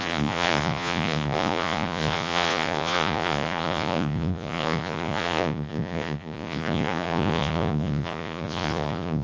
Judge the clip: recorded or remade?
remade